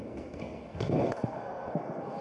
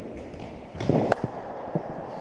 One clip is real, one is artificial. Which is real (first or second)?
second